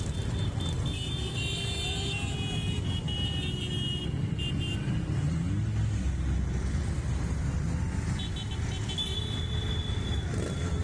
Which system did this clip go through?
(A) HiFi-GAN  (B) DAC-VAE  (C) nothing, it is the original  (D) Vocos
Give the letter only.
C